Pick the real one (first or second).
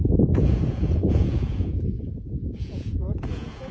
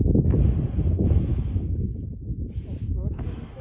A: second